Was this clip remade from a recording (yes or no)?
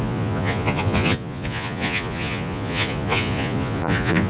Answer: yes